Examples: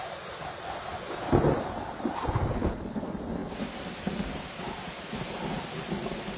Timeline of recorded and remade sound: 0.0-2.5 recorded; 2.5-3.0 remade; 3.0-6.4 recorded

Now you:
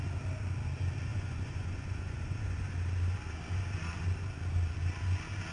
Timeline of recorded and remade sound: 0.0-1.1 recorded; 1.1-2.7 remade; 2.7-5.5 recorded

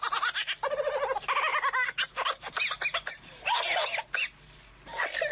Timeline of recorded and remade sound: 0.0-5.3 recorded

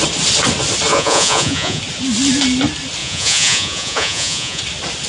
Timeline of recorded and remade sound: 0.0-0.9 recorded; 0.9-1.8 remade; 1.8-3.0 recorded; 3.0-4.6 remade; 4.6-5.1 recorded

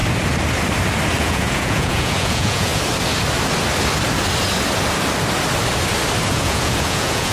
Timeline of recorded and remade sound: 0.0-1.2 recorded; 1.2-2.7 remade; 2.7-6.3 recorded; 6.3-7.3 remade

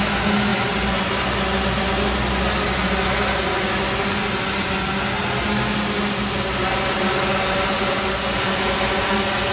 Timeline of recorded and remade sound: 0.0-9.5 recorded

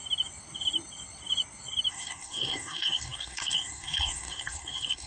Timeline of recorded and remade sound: 0.0-1.9 recorded; 1.9-5.1 remade

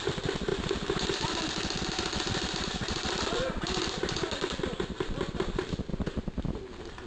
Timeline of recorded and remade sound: 0.0-5.9 remade; 5.9-7.1 recorded